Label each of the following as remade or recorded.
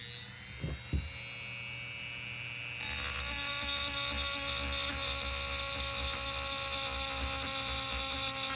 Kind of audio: recorded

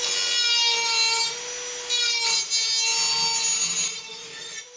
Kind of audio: recorded